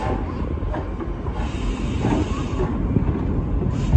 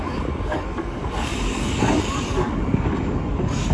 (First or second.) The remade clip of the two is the second